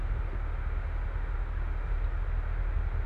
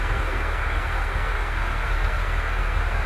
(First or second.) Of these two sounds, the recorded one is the first